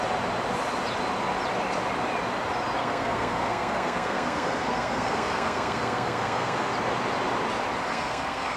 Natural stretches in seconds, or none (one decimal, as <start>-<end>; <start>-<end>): 0.0-2.8; 6.7-7.9